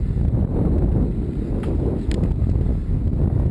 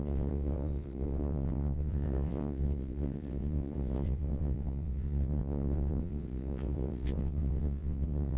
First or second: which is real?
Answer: first